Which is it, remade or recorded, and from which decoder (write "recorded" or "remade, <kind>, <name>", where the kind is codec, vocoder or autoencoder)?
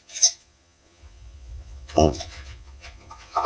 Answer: remade, vocoder, Vocos